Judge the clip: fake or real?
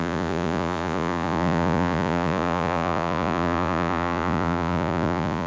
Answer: fake